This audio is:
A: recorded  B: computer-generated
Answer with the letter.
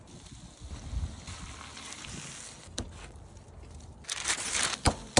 A